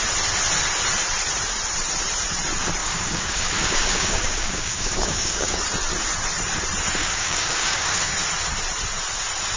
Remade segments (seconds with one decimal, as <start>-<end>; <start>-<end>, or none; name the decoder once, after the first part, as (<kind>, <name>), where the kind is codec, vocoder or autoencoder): 2.8-5.6 (codec, DAC); 7.0-8.1